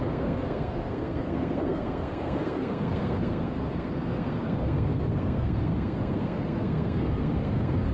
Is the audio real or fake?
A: fake